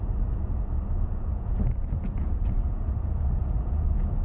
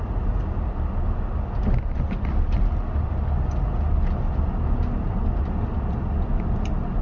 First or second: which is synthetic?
first